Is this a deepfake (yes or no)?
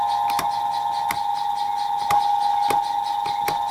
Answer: no